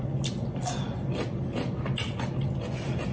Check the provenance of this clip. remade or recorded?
recorded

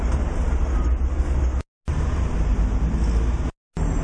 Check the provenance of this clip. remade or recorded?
recorded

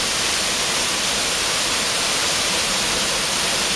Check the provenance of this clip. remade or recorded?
recorded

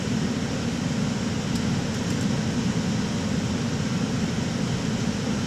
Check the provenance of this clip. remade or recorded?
recorded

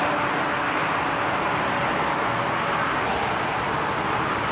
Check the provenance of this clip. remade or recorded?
recorded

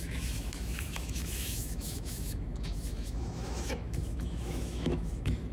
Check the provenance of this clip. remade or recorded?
remade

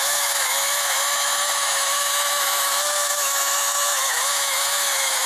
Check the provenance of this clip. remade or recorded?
remade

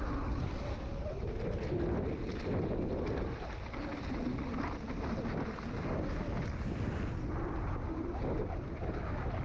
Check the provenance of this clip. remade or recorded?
recorded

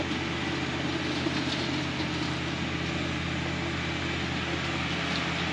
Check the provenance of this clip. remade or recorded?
recorded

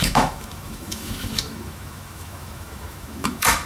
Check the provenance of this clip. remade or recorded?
remade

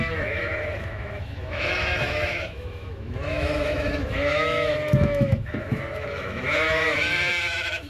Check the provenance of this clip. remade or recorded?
remade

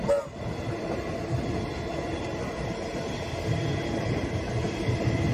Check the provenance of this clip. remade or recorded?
recorded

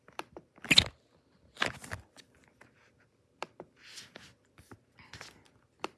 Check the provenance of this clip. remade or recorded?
recorded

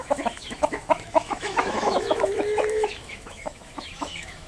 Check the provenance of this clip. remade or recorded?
remade